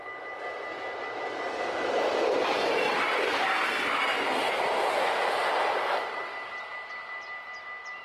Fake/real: real